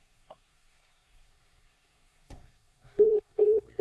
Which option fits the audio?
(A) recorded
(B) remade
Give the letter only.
B